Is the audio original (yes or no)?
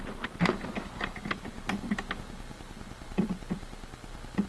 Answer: no